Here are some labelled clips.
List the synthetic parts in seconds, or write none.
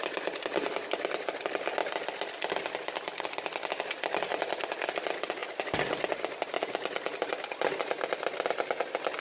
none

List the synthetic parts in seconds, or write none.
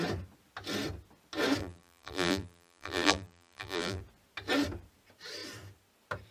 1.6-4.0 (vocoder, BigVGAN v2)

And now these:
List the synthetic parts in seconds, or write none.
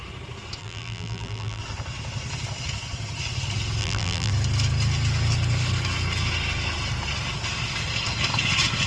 0.6-1.6 (vocoder, BigVGAN v2); 3.8-4.3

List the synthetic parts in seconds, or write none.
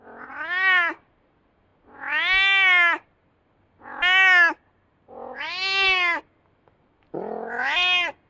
none